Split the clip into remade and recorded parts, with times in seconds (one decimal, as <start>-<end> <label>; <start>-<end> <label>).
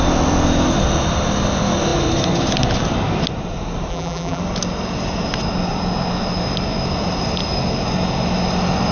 0.0-3.9 recorded; 3.9-4.4 remade; 4.4-8.9 recorded